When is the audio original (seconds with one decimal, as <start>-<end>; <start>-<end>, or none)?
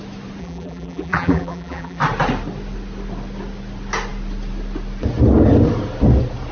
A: 0.0-0.4; 2.0-6.5